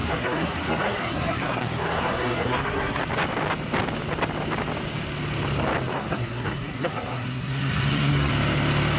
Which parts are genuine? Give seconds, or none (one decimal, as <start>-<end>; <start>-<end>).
3.0-5.9; 8.3-9.0